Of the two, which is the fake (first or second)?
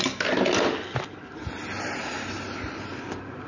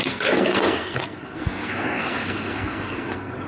second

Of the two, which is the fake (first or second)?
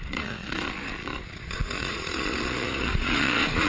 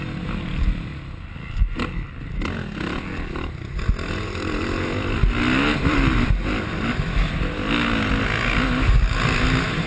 first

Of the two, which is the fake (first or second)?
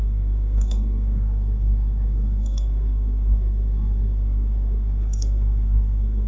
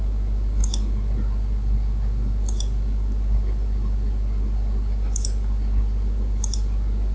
first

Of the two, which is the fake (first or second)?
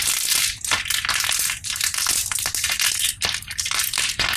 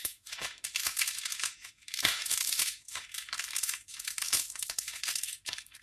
second